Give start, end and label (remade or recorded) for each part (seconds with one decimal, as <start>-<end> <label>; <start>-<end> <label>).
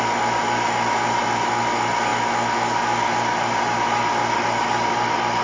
0.0-5.4 recorded